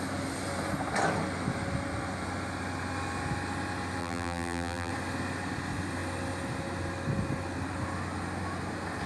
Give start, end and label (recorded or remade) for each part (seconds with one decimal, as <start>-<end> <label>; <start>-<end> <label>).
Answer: 0.0-4.0 recorded; 4.0-4.9 remade; 4.9-9.1 recorded